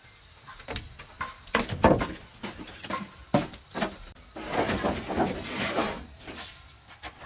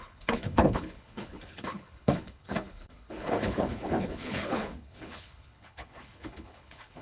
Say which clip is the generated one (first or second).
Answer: second